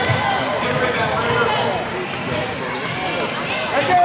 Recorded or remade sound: recorded